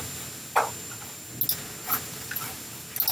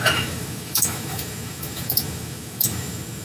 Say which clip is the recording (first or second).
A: first